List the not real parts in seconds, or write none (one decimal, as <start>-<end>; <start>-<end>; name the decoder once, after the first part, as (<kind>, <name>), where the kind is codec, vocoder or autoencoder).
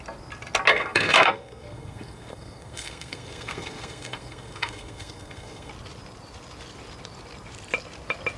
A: 0.7-5.7 (codec, SNAC)